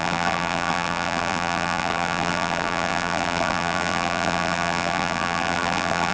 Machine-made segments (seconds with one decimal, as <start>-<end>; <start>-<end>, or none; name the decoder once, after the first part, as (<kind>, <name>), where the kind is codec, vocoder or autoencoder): 0.0-6.1 (vocoder, BigVGAN v2)